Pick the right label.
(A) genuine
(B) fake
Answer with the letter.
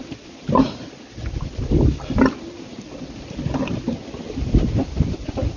A